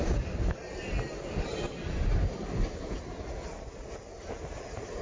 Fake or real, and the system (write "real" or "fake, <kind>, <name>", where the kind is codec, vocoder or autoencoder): real